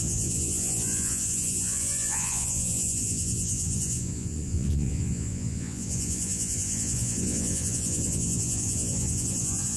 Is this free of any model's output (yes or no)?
no